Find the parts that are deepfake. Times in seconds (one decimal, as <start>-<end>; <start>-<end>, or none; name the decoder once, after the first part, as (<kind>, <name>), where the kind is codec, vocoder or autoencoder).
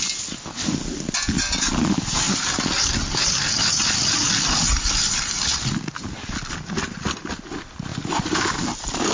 none